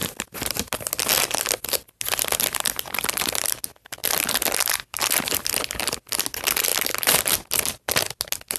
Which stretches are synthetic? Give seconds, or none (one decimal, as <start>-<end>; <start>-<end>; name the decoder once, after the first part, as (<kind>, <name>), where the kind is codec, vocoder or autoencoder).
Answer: none